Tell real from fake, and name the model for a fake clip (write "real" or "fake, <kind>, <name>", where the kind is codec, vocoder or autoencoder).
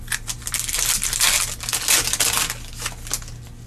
real